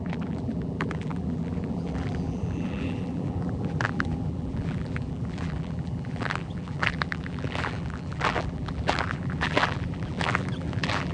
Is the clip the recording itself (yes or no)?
no